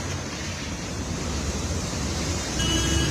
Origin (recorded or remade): remade